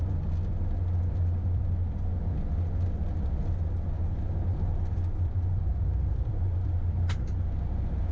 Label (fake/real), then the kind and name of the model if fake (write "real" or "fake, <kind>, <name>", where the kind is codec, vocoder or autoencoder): real